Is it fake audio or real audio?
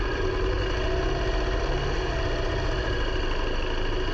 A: real